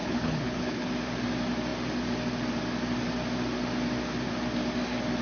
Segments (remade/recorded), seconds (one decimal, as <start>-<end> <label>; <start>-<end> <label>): 0.0-0.9 remade; 0.9-5.2 recorded